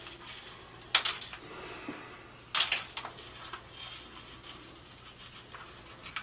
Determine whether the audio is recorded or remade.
recorded